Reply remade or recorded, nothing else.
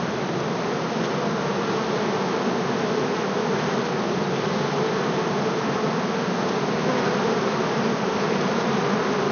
recorded